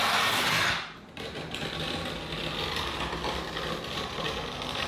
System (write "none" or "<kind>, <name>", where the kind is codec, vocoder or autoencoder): none